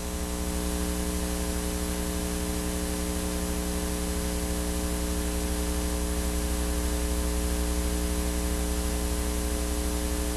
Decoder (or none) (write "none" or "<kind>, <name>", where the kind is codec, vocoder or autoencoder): none